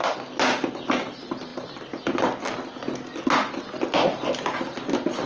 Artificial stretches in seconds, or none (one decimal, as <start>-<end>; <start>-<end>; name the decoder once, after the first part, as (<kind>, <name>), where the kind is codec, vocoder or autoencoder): none